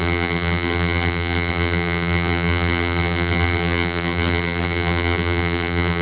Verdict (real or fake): fake